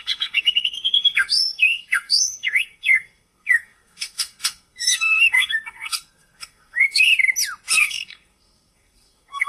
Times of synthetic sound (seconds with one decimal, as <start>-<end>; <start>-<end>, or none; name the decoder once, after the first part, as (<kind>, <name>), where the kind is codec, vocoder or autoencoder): 0.0-7.1 (codec, SNAC); 7.8-9.5